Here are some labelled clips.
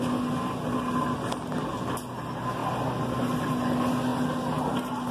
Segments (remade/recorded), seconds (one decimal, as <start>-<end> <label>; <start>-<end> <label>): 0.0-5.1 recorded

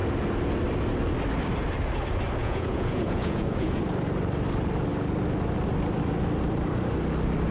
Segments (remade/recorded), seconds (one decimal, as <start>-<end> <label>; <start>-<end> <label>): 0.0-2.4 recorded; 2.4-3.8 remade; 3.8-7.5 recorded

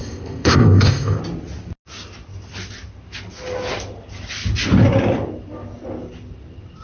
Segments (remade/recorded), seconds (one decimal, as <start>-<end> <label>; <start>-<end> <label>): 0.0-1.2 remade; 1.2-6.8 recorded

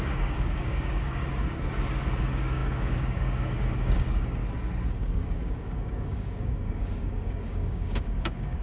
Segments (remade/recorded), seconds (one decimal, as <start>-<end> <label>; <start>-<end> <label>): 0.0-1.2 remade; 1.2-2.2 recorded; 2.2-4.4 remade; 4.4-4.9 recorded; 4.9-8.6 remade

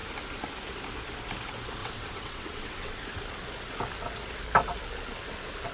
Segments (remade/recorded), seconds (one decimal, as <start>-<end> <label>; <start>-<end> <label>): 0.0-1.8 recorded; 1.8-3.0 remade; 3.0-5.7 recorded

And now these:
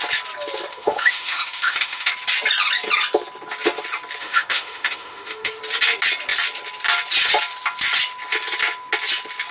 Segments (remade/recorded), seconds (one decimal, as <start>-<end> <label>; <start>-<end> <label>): 0.0-0.7 recorded; 0.7-2.1 remade; 2.1-4.2 recorded; 4.2-5.6 remade; 5.6-9.5 recorded